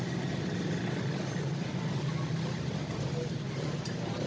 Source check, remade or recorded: recorded